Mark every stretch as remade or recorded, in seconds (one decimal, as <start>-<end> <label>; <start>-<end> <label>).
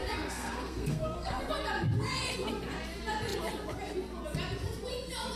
0.0-1.5 remade; 1.5-5.4 recorded